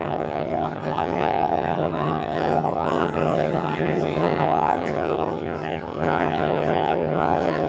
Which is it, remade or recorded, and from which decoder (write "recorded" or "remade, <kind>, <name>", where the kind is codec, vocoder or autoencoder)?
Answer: remade, vocoder, HiFi-GAN